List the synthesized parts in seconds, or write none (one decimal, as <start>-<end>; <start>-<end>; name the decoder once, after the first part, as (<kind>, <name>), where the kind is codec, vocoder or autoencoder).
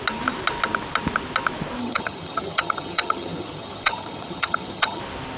1.8-5.0 (vocoder, HiFi-GAN)